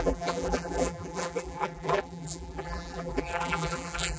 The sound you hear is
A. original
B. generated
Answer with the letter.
B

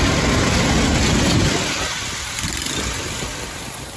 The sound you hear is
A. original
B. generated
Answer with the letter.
A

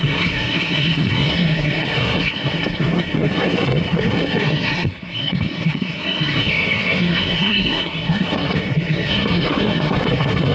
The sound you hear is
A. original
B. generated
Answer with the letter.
B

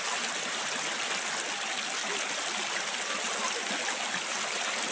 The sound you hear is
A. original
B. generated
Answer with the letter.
A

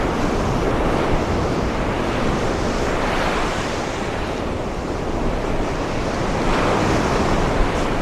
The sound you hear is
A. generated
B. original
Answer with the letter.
B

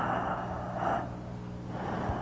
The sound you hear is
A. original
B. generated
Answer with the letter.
A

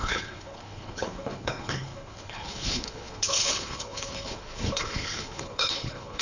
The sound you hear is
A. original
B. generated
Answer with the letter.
B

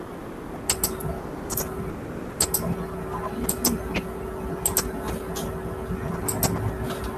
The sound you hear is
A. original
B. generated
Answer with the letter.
A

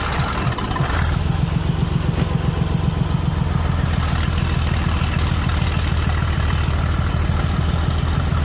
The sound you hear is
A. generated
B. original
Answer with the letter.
B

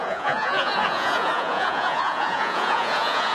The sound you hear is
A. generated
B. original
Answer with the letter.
A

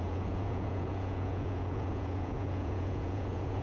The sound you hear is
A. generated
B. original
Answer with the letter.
A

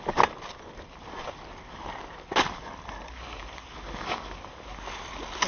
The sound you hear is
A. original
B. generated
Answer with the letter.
A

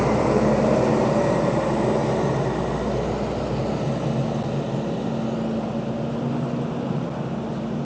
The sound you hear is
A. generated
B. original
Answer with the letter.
B